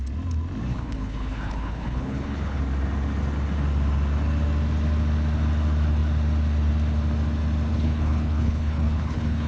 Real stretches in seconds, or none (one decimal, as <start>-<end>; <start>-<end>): 0.0-0.7; 2.6-7.7